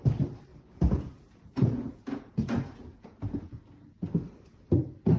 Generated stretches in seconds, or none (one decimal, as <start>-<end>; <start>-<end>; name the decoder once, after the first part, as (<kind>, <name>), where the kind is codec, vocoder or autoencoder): 0.5-3.6 (vocoder, Vocos)